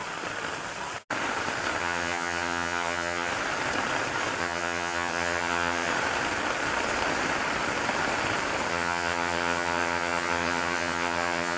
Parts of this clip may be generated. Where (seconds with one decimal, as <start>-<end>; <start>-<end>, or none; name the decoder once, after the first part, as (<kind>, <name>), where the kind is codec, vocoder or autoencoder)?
1.8-3.3 (vocoder, HiFi-GAN); 4.4-5.9; 8.7-11.6